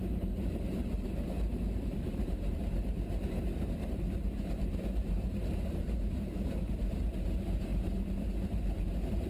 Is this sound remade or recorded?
remade